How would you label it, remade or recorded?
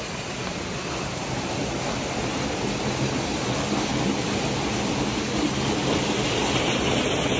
recorded